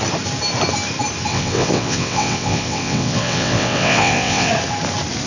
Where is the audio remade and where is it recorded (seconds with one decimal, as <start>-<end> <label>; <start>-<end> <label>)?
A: 0.0-1.3 recorded; 1.3-4.5 remade; 4.5-5.3 recorded